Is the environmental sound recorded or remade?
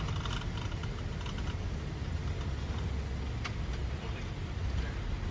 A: recorded